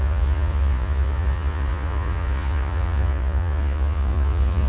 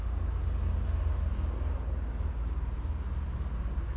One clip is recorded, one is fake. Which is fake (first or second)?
first